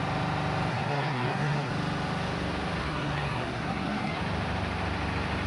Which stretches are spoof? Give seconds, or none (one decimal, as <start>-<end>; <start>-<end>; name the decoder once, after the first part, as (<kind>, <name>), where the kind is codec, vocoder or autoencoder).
0.7-1.7 (codec, SNAC); 2.8-4.2